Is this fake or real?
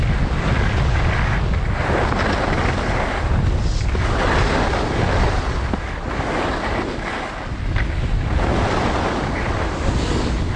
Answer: real